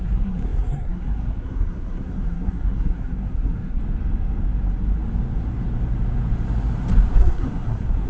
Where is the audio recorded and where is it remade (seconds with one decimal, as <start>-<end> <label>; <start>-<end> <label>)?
0.0-3.8 remade; 3.8-7.1 recorded; 7.1-8.1 remade